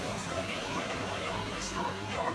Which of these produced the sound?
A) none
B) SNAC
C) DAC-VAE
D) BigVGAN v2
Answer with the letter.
B